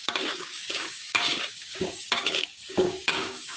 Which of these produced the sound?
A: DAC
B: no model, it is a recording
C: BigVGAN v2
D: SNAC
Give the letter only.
A